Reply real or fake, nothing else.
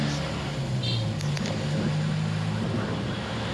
real